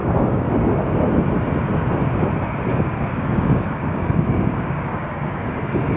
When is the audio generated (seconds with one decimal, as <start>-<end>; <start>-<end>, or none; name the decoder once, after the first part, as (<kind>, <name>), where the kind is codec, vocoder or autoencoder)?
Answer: 0.0-0.5 (codec, DAC); 2.7-5.4